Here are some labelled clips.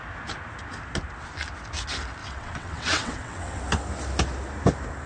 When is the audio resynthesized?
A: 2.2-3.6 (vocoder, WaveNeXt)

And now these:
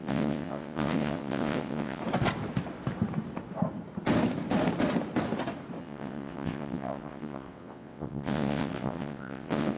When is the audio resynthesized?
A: 0.0-2.0 (vocoder, WaveNeXt); 5.8-9.8

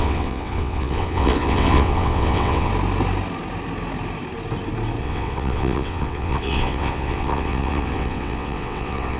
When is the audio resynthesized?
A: 0.0-2.7 (vocoder, WaveNeXt); 5.0-9.2

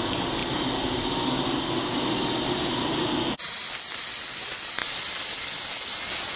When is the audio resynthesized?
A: none

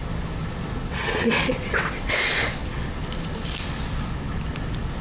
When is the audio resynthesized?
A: 0.6-2.1 (vocoder, WaveNeXt)

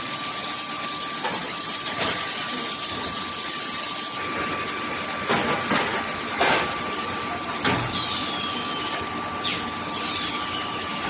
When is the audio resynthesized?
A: none